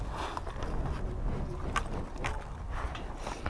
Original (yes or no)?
yes